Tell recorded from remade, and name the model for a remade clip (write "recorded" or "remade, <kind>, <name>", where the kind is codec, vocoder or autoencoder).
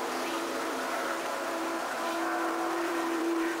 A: remade, vocoder, BigVGAN v2